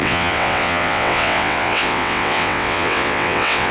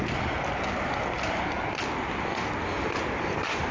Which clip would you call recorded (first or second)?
second